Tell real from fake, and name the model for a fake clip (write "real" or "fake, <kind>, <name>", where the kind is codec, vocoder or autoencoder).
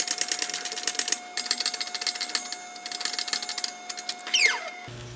real